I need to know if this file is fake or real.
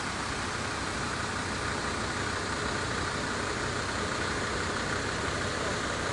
real